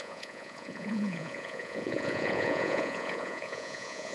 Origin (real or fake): fake